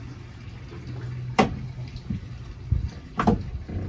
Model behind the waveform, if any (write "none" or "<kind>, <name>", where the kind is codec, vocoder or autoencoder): none